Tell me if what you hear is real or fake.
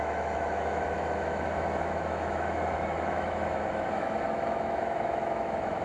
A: fake